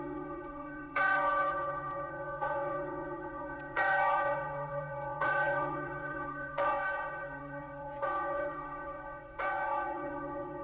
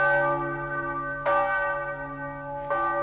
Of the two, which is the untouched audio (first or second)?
second